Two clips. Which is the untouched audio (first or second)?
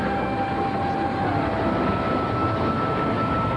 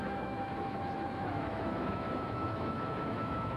first